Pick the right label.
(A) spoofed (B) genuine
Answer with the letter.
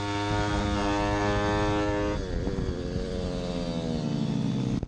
B